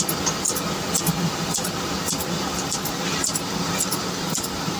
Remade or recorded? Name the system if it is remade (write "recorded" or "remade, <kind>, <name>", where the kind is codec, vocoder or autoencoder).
recorded